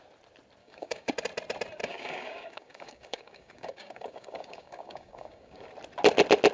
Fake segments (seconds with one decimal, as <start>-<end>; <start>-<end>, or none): 0.6-1.1; 1.8-5.7